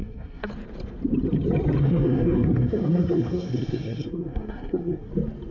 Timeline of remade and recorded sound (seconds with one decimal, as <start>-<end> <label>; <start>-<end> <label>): 0.0-0.5 remade; 0.5-1.8 recorded; 1.8-5.1 remade; 5.1-5.5 recorded